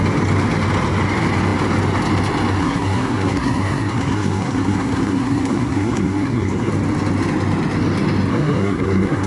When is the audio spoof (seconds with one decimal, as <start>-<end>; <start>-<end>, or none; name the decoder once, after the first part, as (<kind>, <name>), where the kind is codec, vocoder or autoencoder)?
2.6-6.7 (codec, SNAC); 8.3-9.3